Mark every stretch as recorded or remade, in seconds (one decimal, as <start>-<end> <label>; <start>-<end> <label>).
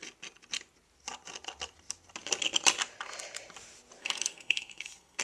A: 0.0-4.0 recorded; 4.0-5.2 remade